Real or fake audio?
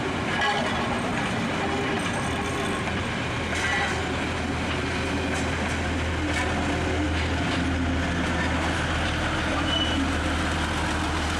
real